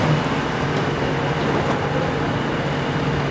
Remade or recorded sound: recorded